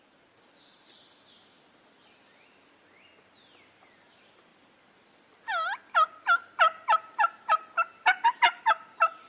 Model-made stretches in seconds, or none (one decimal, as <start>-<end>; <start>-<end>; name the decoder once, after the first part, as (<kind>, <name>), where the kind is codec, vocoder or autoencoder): none